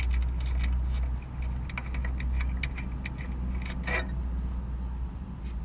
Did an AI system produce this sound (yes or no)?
no